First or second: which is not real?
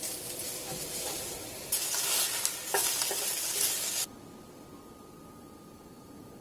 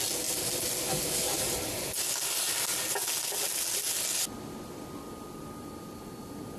first